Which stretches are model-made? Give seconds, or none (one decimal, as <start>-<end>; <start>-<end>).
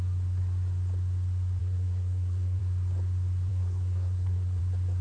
1.6-2.6; 3.5-4.6